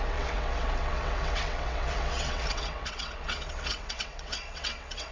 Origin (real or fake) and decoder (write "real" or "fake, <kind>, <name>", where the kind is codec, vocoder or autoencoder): fake, vocoder, WaveNeXt